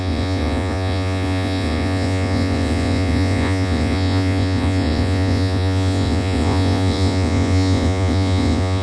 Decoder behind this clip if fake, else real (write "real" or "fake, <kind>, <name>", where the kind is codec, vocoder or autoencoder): fake, vocoder, Vocos